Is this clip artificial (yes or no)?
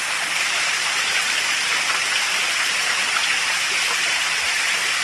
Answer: no